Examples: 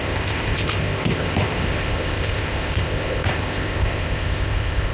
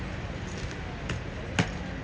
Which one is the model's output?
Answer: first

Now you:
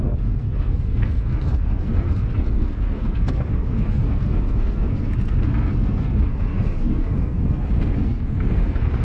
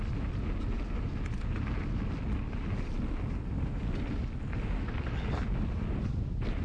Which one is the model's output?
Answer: first